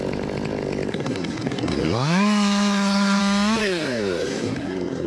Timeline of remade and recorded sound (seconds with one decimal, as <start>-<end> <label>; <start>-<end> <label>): 0.0-0.9 recorded; 0.9-3.2 remade; 3.2-3.6 recorded; 3.6-5.1 remade